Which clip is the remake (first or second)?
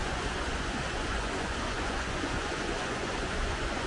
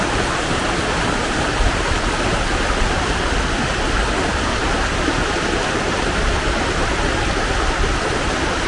first